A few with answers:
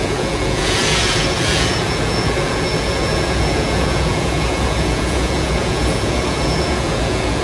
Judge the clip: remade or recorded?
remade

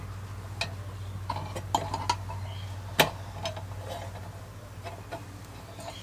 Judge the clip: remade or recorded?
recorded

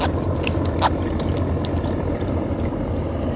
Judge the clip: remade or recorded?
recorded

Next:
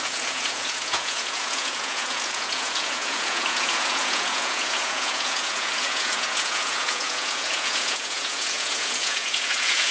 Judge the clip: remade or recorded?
remade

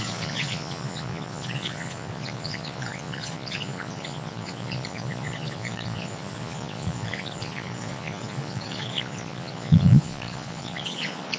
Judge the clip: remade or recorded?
remade